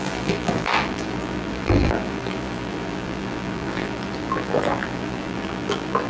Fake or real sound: fake